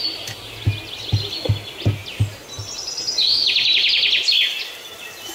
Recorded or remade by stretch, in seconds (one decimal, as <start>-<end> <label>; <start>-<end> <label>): 0.0-5.3 recorded